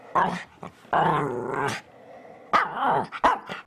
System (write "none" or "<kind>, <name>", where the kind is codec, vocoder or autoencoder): none